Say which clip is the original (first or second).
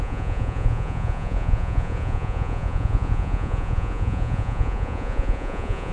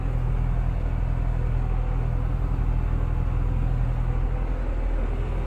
second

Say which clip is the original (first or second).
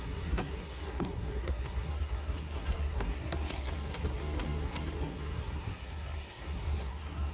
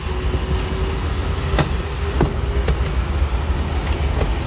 second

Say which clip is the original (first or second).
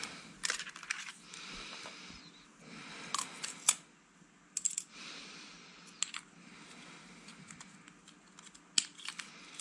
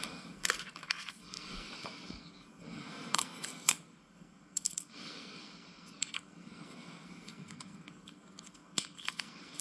first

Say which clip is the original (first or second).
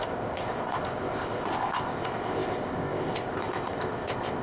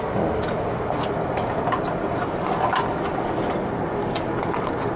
second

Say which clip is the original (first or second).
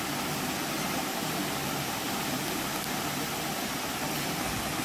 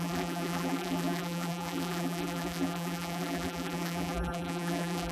first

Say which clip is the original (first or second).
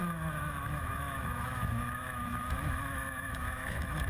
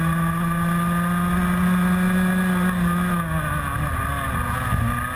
second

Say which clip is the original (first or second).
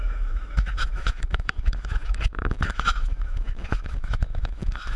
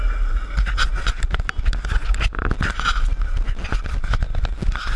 second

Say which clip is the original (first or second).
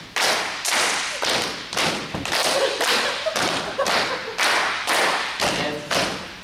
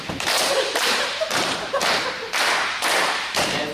first